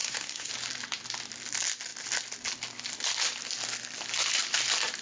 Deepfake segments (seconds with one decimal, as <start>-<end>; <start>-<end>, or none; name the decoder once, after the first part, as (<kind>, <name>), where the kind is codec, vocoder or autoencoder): 0.0-0.5 (codec, SNAC)